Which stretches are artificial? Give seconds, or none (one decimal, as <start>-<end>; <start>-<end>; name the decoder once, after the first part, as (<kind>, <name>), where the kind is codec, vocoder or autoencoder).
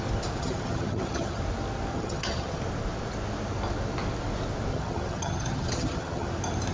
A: 0.4-1.4 (vocoder, HiFi-GAN); 1.9-2.6; 4.7-6.3